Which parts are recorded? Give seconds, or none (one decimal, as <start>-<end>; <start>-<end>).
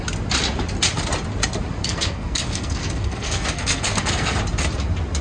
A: 0.0-1.8; 4.4-5.2